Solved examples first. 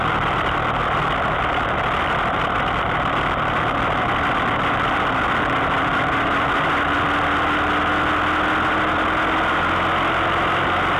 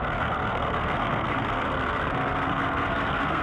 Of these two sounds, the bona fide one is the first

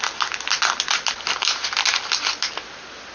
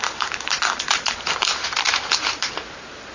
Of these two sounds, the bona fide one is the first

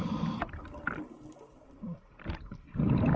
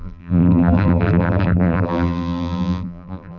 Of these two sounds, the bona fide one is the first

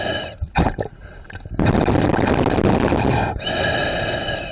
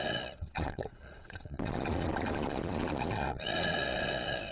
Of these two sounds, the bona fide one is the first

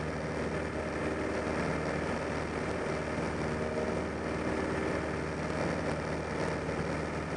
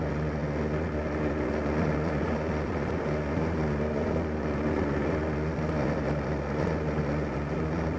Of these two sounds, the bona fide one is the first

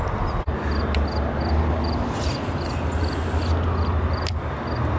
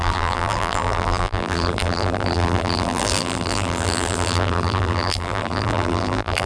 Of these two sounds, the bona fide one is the first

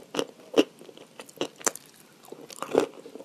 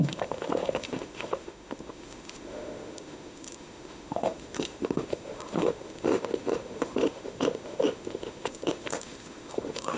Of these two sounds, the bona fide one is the first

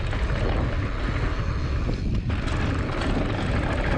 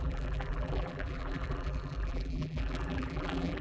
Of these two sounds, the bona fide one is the first